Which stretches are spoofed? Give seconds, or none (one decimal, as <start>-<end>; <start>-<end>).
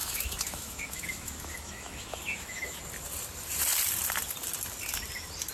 0.0-2.8